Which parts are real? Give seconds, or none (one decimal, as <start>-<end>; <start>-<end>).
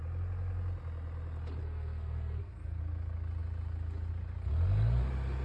0.0-1.6; 2.8-5.4